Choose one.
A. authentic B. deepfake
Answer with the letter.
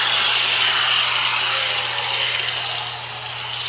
A